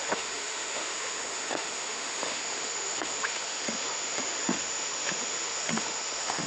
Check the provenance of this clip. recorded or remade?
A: remade